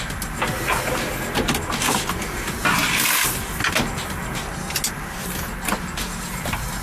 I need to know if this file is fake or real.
real